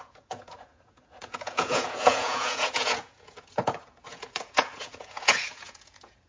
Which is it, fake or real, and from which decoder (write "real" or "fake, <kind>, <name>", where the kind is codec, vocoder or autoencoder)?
fake, vocoder, Vocos